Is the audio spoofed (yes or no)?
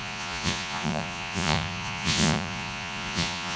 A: yes